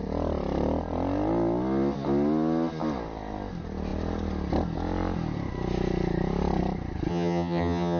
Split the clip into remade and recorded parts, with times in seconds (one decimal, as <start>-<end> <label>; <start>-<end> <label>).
0.0-7.1 recorded; 7.1-8.0 remade